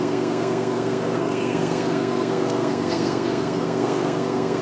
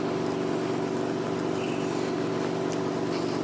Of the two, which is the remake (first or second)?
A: first